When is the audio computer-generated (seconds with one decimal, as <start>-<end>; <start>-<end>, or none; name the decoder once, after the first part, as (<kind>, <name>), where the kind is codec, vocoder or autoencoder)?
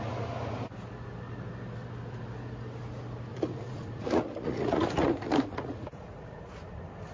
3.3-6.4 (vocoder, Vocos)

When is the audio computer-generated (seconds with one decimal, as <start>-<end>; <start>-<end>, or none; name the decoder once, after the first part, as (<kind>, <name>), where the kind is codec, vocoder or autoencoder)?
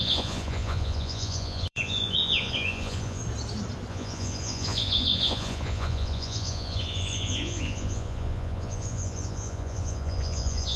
0.0-3.2 (vocoder, Vocos); 3.9-10.8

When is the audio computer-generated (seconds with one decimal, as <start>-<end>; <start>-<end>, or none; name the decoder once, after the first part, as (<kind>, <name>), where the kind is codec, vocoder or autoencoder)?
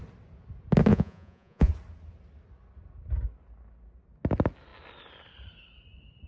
0.9-1.7 (vocoder, Vocos)